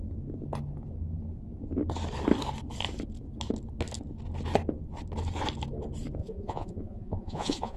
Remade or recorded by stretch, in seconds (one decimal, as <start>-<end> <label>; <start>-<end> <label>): 0.0-6.2 recorded; 6.2-7.8 remade